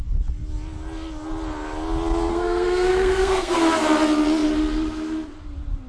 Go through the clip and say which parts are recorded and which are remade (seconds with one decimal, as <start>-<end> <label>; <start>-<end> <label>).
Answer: 0.0-2.3 recorded; 2.3-3.6 remade; 3.6-5.9 recorded

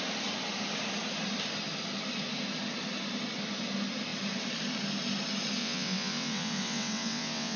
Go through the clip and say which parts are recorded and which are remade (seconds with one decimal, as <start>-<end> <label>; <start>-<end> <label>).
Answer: 0.0-5.6 recorded; 5.6-7.6 remade

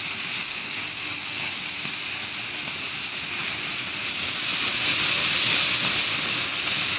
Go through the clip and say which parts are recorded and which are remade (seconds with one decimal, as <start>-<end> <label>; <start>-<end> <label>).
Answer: 0.0-0.4 recorded; 0.4-1.6 remade; 1.6-7.0 recorded

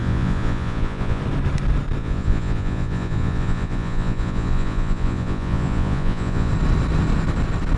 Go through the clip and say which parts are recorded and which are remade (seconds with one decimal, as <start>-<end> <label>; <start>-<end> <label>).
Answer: 0.0-1.2 remade; 1.2-2.0 recorded; 2.0-6.5 remade; 6.5-7.8 recorded

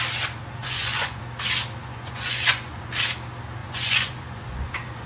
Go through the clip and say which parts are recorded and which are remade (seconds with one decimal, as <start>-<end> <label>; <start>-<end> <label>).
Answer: 0.0-0.6 recorded; 0.6-1.2 remade; 1.2-1.8 recorded; 1.8-2.9 remade; 2.9-3.6 recorded; 3.6-5.1 remade